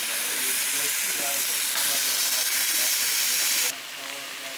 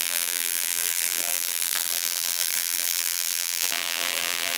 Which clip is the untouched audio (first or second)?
first